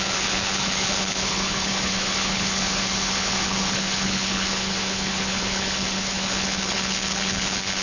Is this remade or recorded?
remade